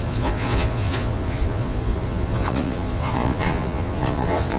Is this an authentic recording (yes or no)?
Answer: no